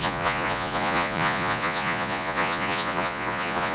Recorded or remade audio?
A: remade